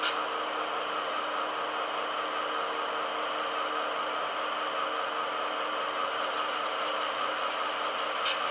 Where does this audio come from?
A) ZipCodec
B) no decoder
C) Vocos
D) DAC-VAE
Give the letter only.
B